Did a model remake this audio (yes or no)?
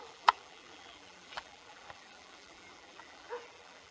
yes